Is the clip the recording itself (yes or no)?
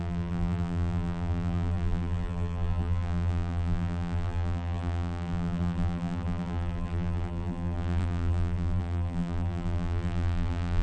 no